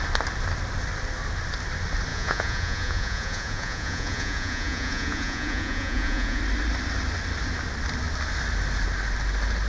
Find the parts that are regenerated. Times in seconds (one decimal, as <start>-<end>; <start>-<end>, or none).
2.1-6.4